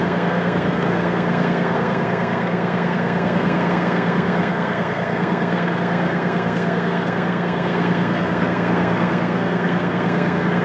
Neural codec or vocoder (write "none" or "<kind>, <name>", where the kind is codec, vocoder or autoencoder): codec, SNAC